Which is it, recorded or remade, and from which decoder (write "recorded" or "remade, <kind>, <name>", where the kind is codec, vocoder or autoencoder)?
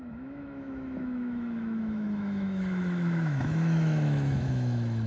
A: remade, autoencoder, DAC-VAE